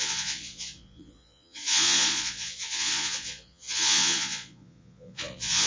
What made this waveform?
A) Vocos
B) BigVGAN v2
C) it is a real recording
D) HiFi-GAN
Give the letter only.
A